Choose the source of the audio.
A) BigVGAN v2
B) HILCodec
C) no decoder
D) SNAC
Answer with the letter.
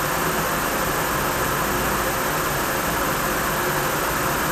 C